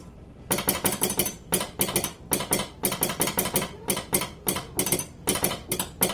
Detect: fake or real real